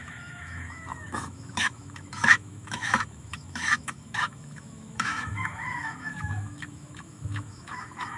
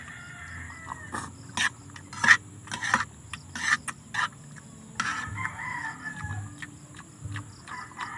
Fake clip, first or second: first